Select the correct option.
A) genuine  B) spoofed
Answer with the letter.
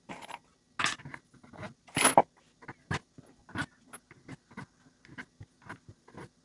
A